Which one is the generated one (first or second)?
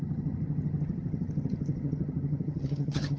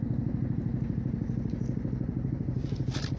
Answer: first